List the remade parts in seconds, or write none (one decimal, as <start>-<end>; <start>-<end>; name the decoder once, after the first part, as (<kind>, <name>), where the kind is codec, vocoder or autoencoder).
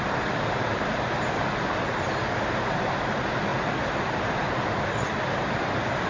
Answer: 3.5-5.1 (vocoder, BigVGAN v2)